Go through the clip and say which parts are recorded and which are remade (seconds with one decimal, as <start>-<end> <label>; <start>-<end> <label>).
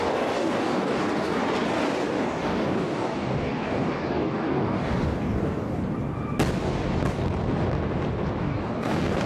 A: 0.0-1.4 remade; 1.4-2.2 recorded; 2.2-5.8 remade; 5.8-8.4 recorded; 8.4-9.3 remade